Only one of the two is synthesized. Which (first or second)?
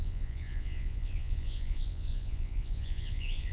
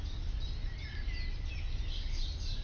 first